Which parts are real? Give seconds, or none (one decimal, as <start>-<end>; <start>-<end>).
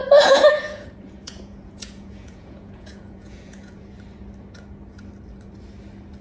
3.7-6.2